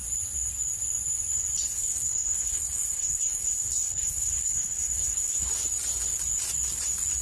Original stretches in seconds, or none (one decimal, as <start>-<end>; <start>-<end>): 0.0-1.6; 5.5-7.2